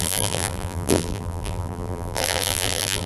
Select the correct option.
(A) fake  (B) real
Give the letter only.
A